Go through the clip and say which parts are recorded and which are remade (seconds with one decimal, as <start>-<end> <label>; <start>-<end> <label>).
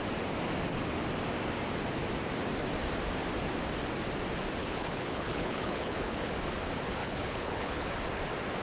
0.0-4.6 recorded; 4.6-6.3 remade; 6.3-7.0 recorded; 7.0-7.9 remade; 7.9-8.6 recorded